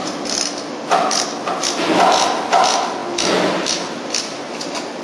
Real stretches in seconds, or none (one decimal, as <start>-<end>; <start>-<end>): 0.0-5.0